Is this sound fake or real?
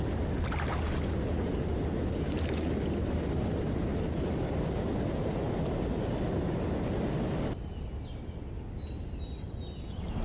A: real